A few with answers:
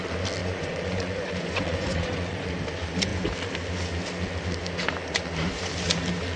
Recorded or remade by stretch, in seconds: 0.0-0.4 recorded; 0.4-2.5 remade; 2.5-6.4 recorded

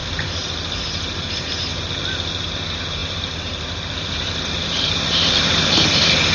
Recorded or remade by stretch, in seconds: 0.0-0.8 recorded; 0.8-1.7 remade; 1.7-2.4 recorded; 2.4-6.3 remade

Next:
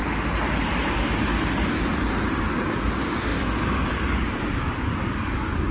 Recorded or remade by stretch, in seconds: 0.0-0.9 recorded; 0.9-1.3 remade; 1.3-2.8 recorded; 2.8-5.7 remade

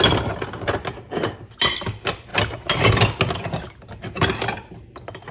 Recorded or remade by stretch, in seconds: 0.0-5.3 recorded